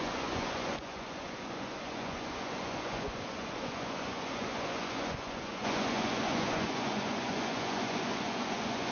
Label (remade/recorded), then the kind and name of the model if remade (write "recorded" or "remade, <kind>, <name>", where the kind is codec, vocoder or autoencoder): remade, vocoder, Vocos